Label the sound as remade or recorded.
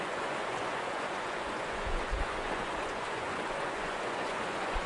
remade